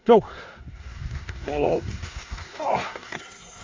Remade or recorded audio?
remade